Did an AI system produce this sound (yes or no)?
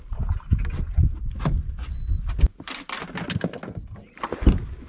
no